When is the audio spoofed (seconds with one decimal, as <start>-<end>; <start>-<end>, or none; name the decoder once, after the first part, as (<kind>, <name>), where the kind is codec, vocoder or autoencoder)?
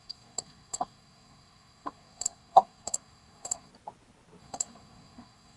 0.0-3.7 (codec, SNAC); 4.4-5.6